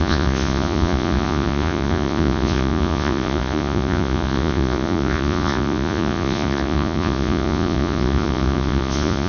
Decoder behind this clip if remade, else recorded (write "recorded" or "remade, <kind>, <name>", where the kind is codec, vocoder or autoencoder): remade, vocoder, Vocos